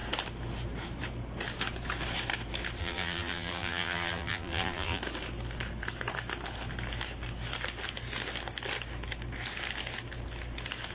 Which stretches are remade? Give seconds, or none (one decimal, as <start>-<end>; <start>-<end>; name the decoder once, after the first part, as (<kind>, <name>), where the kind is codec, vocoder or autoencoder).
2.8-5.0 (vocoder, BigVGAN v2)